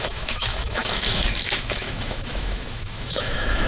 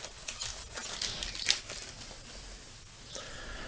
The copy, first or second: first